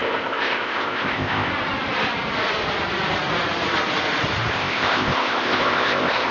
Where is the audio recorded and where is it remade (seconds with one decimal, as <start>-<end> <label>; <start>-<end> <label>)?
0.0-1.5 remade; 1.5-4.5 recorded; 4.5-6.3 remade